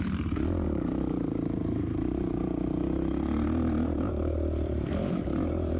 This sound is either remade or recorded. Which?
remade